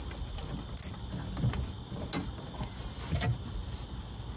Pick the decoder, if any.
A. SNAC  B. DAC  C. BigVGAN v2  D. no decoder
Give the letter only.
D